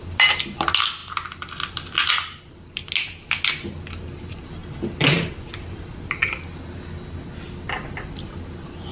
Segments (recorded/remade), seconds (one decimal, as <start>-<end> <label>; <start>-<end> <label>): 0.0-4.6 recorded; 4.6-5.4 remade; 5.4-8.9 recorded